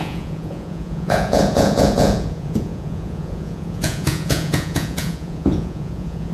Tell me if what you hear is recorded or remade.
remade